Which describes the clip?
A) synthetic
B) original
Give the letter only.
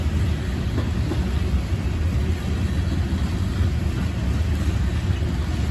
B